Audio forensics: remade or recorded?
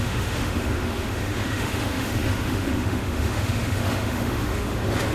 remade